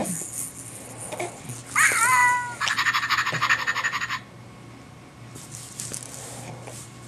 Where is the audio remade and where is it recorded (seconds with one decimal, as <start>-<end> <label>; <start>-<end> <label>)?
0.0-7.1 recorded